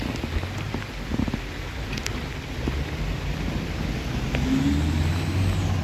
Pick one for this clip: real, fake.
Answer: real